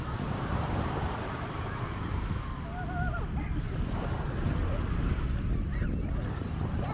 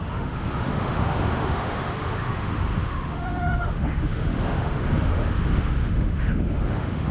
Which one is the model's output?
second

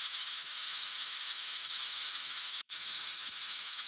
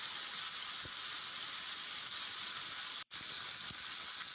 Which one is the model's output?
first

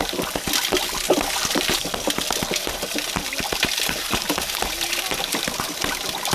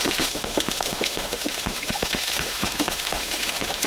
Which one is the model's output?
second